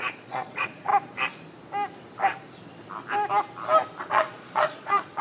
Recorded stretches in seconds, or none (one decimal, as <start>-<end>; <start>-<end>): 0.9-4.0

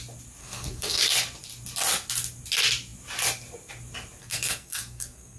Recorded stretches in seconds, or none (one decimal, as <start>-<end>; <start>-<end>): 0.0-0.4; 1.0-4.2

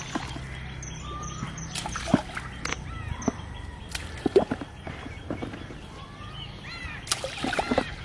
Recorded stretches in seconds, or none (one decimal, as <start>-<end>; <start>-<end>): 0.0-1.2; 2.1-8.0

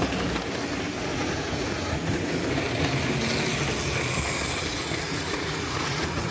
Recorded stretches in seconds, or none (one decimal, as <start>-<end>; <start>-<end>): 0.0-1.1; 2.4-4.7

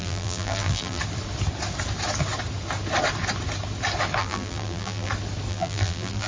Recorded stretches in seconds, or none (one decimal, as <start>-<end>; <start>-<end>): 1.0-4.2; 5.1-5.5

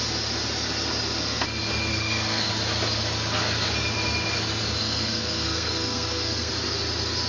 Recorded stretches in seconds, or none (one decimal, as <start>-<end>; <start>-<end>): 0.0-1.9; 2.5-4.8; 6.5-7.3

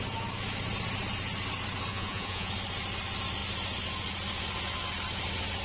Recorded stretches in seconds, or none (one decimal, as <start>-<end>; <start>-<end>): 0.0-1.9; 2.5-5.6

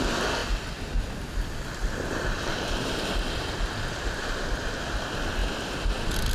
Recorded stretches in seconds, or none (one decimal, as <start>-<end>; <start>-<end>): 0.0-6.3